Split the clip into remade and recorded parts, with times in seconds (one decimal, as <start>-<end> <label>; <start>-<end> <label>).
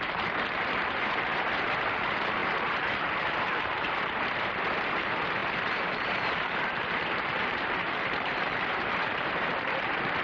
0.0-10.2 remade